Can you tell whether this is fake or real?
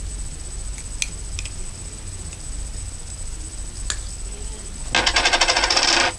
real